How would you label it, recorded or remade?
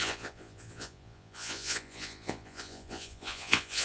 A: remade